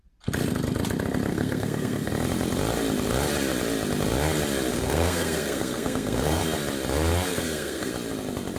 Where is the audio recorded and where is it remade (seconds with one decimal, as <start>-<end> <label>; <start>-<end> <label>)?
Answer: 0.0-1.3 recorded; 1.3-2.1 remade; 2.1-4.7 recorded; 4.7-6.4 remade; 6.4-7.3 recorded; 7.3-7.9 remade; 7.9-8.6 recorded